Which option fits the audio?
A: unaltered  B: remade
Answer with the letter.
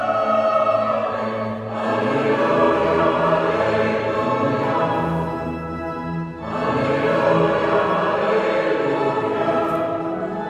A